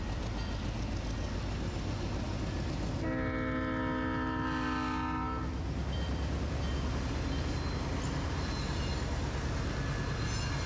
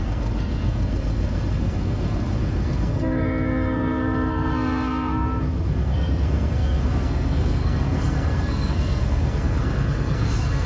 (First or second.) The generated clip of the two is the second